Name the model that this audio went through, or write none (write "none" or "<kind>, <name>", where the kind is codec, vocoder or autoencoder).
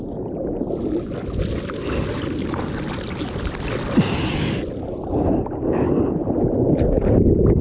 none